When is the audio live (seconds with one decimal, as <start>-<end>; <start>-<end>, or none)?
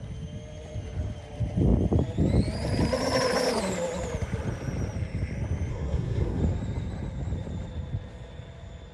0.0-5.7; 6.4-8.9